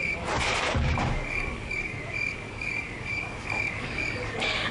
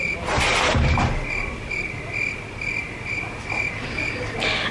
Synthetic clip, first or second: first